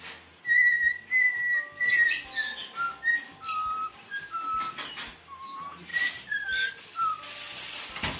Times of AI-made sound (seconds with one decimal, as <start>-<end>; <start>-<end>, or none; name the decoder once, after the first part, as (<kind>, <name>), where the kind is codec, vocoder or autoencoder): 5.9-6.7 (vocoder, BigVGAN v2)